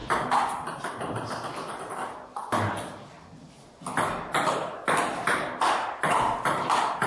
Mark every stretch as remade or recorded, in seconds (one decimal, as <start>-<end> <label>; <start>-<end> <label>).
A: 0.0-7.1 recorded

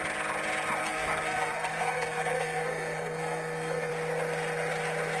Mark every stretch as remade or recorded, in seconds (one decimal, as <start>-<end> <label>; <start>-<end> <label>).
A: 0.0-0.8 recorded; 0.8-3.9 remade; 3.9-5.2 recorded

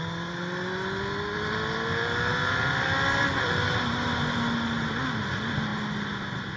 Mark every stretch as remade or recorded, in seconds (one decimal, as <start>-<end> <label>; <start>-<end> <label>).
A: 0.0-6.6 recorded

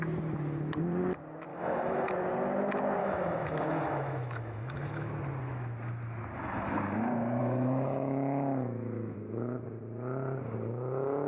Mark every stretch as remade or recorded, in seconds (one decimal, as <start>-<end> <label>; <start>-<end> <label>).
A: 0.0-1.5 recorded; 1.5-2.1 remade; 2.1-3.0 recorded; 3.0-5.1 remade; 5.1-7.4 recorded; 7.4-9.6 remade; 9.6-11.3 recorded

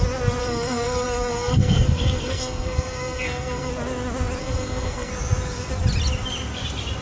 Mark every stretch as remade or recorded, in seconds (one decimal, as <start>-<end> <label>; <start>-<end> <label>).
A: 0.0-0.4 recorded; 0.4-3.7 remade; 3.7-4.4 recorded; 4.4-5.1 remade; 5.1-7.0 recorded

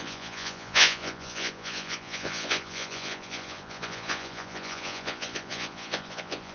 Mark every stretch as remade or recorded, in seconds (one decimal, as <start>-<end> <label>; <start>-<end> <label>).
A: 0.0-6.5 remade

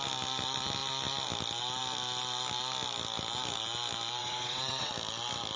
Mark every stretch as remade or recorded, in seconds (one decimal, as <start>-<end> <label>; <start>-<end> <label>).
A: 0.0-4.2 recorded; 4.2-4.9 remade; 4.9-5.6 recorded

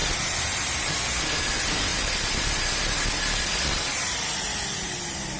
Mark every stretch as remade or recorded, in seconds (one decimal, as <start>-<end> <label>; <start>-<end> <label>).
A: 0.0-5.4 recorded